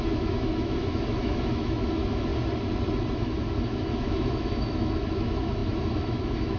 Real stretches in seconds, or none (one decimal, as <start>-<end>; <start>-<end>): 2.3-3.1